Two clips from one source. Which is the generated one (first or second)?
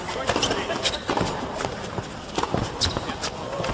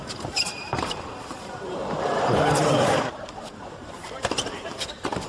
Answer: second